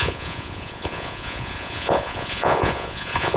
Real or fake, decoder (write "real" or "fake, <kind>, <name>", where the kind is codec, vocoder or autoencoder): fake, vocoder, Vocos